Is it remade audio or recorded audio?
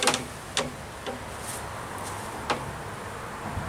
recorded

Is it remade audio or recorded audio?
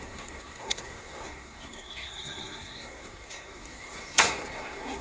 remade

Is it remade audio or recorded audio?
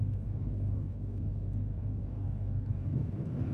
remade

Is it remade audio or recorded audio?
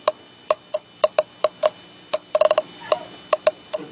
recorded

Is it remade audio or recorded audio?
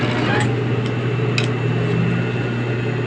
recorded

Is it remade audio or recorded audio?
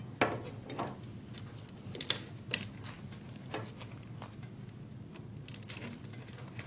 recorded